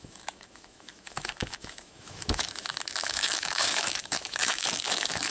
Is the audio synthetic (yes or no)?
yes